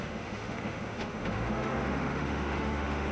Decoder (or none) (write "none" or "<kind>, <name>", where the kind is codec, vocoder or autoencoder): autoencoder, DAC-VAE